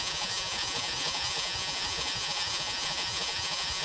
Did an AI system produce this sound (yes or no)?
yes